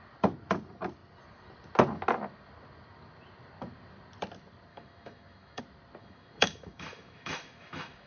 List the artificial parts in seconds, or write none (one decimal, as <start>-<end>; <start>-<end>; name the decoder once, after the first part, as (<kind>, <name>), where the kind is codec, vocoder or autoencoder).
4.7-5.6 (autoencoder, DAC-VAE); 6.0-8.1